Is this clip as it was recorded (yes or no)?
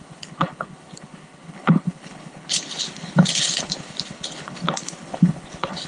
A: no